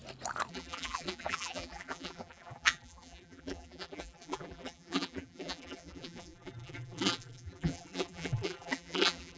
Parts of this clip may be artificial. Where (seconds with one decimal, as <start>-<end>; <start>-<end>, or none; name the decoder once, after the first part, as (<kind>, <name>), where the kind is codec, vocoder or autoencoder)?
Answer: 0.5-9.4 (vocoder, BigVGAN v2)